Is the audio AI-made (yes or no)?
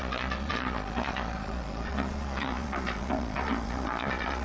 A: yes